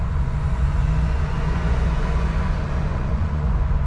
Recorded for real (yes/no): no